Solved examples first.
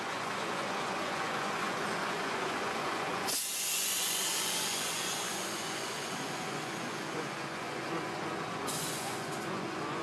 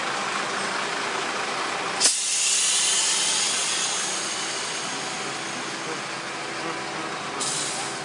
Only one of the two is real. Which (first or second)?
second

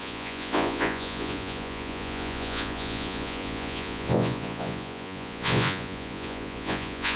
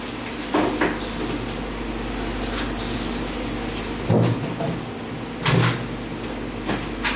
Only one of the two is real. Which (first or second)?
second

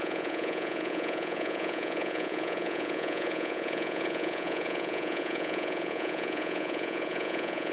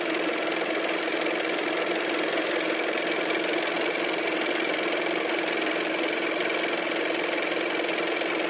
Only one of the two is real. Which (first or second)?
second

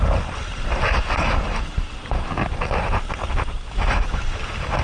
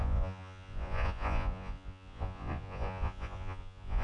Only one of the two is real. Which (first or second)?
first